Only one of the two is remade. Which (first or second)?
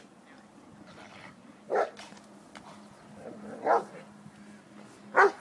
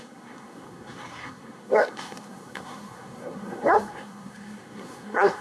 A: second